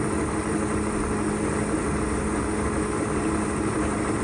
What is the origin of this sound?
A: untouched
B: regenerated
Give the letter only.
A